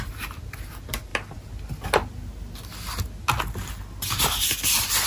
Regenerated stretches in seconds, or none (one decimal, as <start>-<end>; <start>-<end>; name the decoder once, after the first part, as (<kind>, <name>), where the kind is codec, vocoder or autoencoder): 0.0-1.1 (vocoder, BigVGAN v2); 4.2-5.1